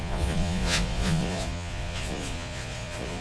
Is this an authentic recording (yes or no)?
no